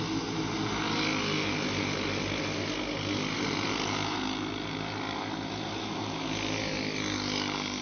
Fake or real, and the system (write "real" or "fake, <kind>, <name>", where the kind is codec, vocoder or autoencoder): real